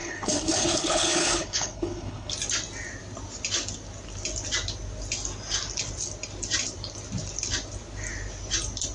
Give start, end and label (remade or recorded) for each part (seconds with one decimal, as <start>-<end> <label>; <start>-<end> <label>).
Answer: 0.0-2.3 remade; 2.3-8.9 recorded